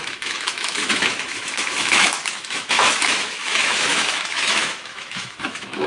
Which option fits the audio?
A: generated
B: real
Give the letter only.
A